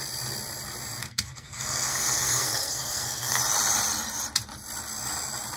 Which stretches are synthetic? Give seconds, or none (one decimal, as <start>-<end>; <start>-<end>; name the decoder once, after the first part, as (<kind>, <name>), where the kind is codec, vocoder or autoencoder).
1.0-3.4 (codec, SNAC)